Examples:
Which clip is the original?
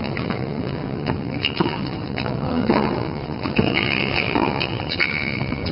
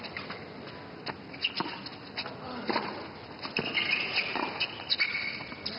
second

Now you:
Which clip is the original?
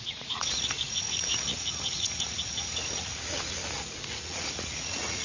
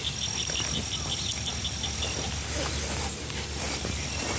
second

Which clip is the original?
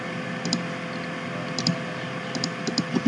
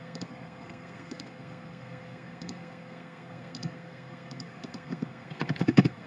first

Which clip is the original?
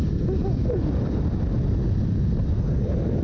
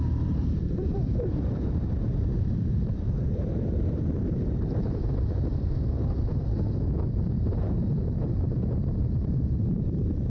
first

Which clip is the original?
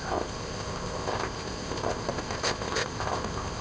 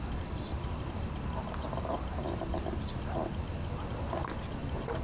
second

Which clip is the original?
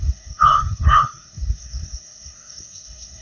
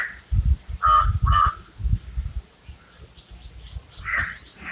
second